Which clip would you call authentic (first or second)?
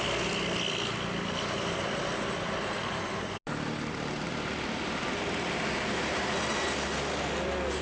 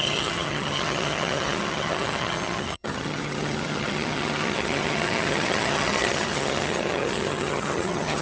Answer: first